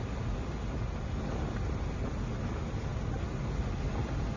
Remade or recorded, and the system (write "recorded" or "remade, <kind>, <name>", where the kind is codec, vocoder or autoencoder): recorded